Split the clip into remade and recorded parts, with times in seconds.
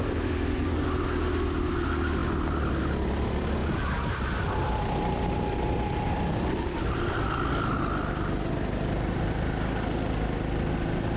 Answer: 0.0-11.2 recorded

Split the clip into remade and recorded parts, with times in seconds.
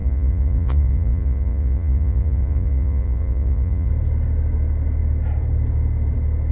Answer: 0.0-3.9 remade; 3.9-6.5 recorded